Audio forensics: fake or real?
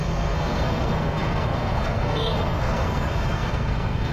fake